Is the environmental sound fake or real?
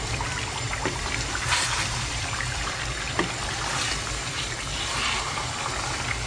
fake